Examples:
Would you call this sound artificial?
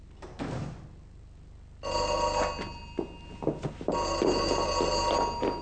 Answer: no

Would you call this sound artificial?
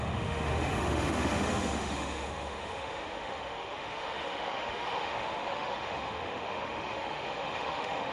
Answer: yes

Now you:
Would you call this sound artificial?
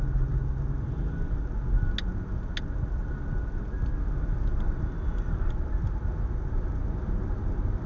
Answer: no